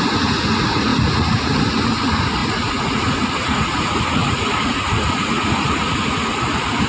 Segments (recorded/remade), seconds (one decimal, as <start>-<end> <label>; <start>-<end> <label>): 0.0-6.9 remade